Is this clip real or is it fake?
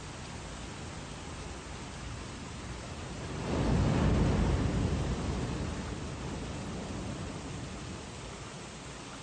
real